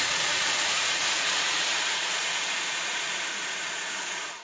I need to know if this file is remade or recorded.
remade